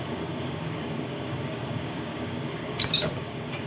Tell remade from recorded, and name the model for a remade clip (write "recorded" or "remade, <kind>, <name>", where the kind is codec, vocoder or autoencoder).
remade, codec, DAC